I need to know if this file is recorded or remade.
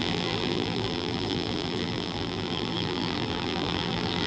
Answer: remade